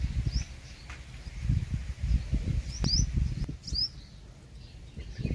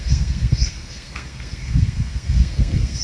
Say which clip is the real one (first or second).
first